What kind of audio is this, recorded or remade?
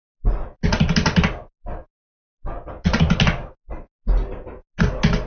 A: recorded